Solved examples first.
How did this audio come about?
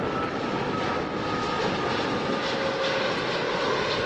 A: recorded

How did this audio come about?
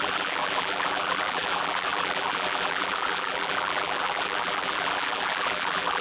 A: remade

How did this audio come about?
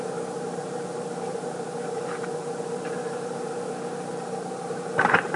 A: remade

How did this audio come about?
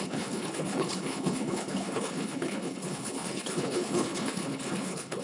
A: remade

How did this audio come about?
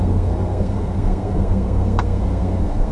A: remade